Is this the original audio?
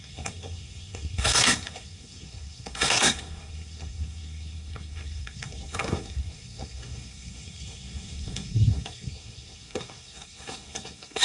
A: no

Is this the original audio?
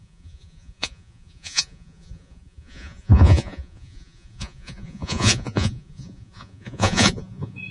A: no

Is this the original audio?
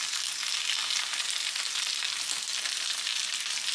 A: yes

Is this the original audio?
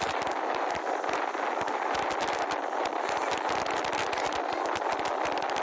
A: yes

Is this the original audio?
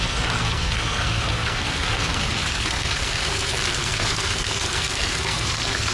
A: no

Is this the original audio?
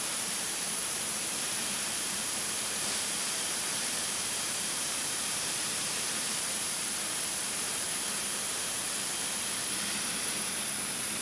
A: no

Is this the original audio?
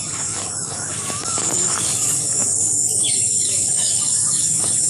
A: no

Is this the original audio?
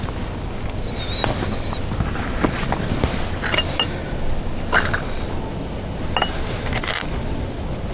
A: yes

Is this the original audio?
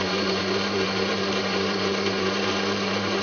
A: no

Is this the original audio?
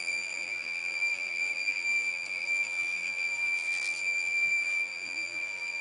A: no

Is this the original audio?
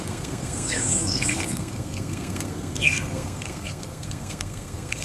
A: no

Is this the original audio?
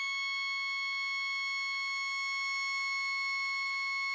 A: yes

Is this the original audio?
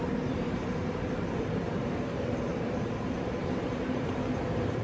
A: no